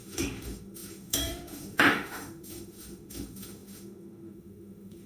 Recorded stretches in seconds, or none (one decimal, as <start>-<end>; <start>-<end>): none